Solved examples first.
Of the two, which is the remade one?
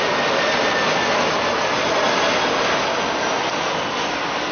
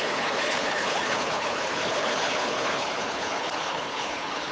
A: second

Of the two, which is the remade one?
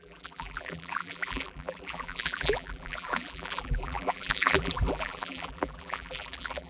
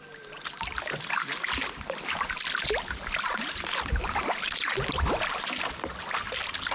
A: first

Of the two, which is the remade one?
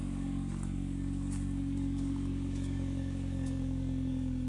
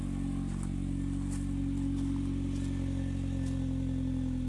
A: first